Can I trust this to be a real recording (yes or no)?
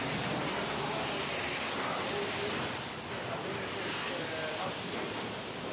yes